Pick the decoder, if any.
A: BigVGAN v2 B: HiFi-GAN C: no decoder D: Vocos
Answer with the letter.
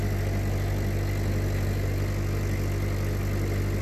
C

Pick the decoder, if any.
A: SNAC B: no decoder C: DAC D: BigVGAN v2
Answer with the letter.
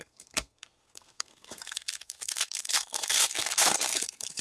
A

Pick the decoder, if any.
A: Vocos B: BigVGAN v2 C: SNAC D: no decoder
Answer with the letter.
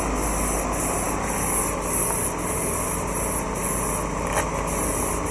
D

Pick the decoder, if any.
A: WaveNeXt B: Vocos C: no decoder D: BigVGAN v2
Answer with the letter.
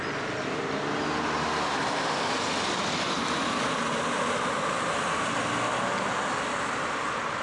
C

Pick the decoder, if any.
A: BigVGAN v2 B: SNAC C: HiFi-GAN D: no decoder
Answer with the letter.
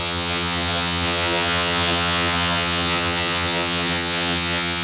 C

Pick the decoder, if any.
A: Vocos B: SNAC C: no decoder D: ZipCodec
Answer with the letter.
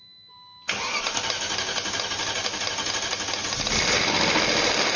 C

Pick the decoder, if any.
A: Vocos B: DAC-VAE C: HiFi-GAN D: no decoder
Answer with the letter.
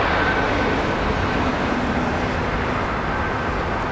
D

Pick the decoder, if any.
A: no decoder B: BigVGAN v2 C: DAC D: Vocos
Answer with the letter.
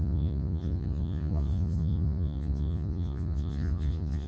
D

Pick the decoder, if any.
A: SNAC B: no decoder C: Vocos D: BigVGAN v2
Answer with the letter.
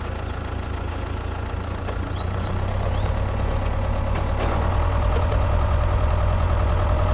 C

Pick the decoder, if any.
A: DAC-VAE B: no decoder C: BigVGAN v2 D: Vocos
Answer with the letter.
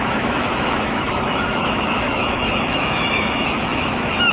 A